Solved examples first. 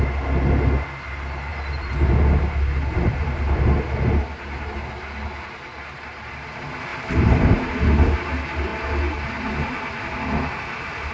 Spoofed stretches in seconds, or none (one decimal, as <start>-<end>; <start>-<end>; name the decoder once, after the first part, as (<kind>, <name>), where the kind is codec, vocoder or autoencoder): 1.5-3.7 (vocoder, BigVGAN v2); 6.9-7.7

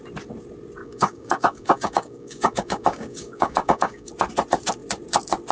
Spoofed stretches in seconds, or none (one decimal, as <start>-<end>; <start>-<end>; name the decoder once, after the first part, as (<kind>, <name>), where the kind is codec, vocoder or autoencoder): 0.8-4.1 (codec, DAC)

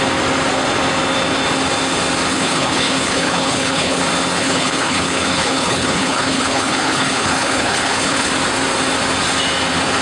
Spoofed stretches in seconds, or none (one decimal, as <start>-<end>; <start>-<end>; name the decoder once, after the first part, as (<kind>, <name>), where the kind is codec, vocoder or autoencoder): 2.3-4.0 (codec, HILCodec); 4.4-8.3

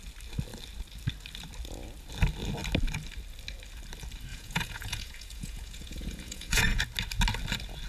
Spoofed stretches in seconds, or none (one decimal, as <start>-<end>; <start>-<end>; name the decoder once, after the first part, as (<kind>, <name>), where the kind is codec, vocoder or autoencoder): 4.3-6.8 (vocoder, Vocos)